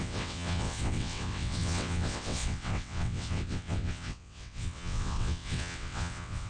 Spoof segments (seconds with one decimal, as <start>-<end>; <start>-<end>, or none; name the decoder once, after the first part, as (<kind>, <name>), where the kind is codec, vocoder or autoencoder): 0.0-6.5 (vocoder, WaveNeXt)